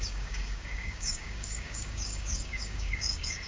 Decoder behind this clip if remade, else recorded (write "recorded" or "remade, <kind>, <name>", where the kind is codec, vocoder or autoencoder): remade, codec, DAC